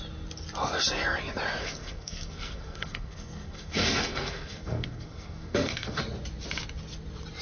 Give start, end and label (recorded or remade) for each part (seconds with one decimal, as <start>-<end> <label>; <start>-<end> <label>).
0.0-1.6 recorded; 1.6-6.0 remade; 6.0-7.4 recorded